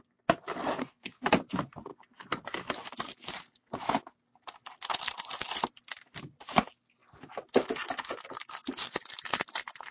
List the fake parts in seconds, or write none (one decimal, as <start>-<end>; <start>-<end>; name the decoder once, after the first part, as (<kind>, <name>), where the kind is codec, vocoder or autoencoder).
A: 0.8-1.3 (codec, SNAC)